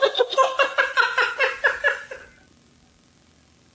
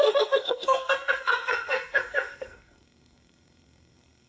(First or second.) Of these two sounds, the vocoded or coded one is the second